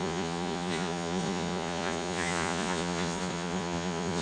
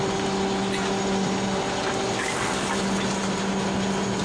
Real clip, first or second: second